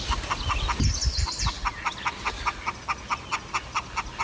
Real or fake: real